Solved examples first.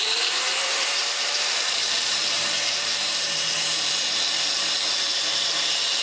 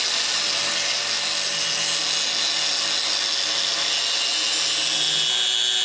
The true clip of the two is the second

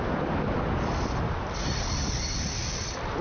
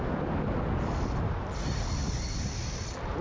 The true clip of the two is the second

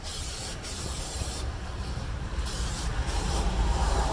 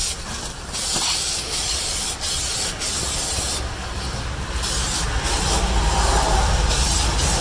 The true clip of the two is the second